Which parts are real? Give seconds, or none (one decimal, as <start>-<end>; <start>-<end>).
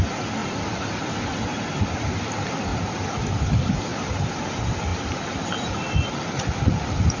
0.0-0.4; 1.1-2.7; 3.5-4.9; 6.2-7.2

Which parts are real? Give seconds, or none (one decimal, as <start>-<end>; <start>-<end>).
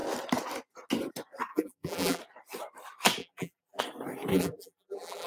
0.0-1.5; 2.2-3.2; 3.8-4.3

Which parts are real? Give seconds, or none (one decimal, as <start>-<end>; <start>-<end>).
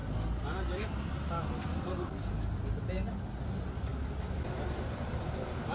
0.0-3.4; 3.9-4.8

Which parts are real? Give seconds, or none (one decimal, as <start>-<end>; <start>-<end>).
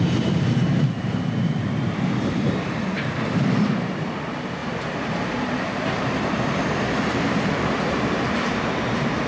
none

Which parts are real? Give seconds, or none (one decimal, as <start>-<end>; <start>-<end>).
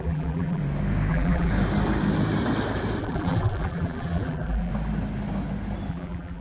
0.6-1.1; 1.5-3.0; 4.7-5.9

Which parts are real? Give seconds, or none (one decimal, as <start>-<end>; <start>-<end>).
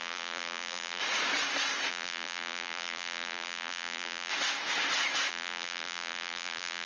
1.0-1.9; 4.3-5.3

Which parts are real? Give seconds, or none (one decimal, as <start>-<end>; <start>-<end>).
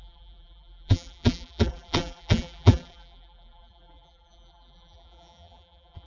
none